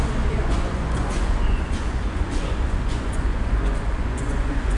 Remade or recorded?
remade